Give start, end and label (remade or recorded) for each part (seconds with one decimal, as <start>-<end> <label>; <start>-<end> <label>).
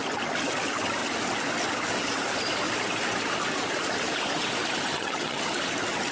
0.0-4.9 recorded; 4.9-5.4 remade; 5.4-6.1 recorded